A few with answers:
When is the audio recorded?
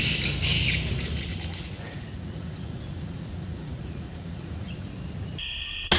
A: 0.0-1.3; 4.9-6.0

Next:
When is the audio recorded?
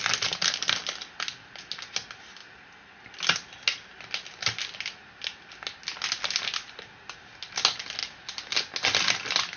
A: 0.0-9.6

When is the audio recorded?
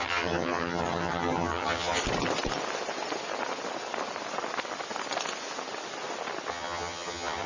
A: 2.0-6.5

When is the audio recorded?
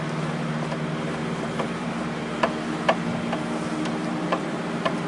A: 0.0-1.2; 1.9-4.1; 4.6-5.1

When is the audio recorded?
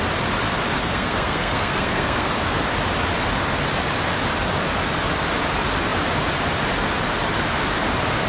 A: 0.0-0.8; 2.3-8.3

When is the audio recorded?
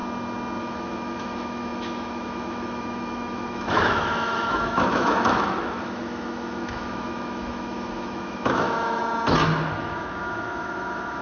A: 0.0-0.6; 9.0-9.8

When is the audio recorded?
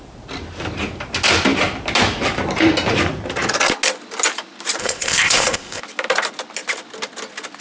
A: 0.0-4.8; 5.8-7.6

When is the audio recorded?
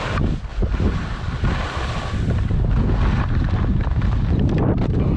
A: 0.0-5.2